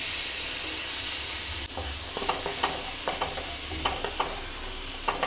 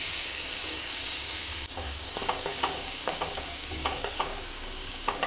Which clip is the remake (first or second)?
second